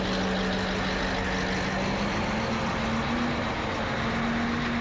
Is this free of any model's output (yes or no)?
yes